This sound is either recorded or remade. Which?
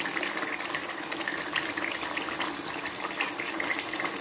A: recorded